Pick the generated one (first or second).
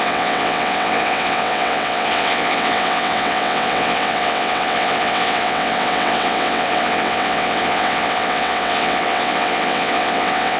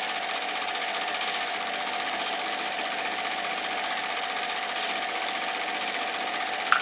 first